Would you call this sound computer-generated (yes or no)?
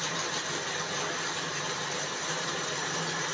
no